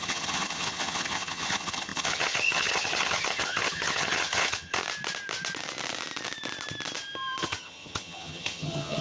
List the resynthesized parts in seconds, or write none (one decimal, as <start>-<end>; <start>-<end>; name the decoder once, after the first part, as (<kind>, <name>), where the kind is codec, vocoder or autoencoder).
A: 0.0-4.8 (vocoder, HiFi-GAN); 7.4-9.0